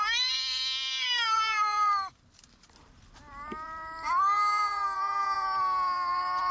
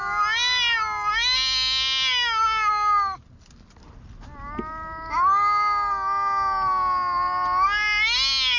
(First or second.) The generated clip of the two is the first